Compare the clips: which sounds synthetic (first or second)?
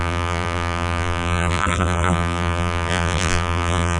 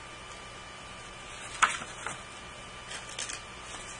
first